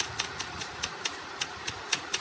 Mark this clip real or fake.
fake